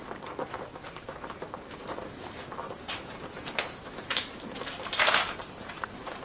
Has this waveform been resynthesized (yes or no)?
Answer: yes